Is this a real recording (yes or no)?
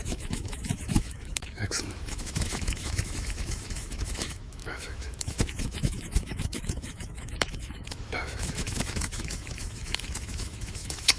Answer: no